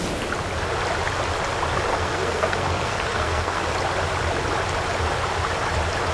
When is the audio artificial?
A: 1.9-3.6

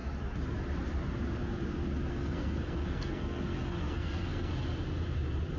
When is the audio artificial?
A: 2.1-4.5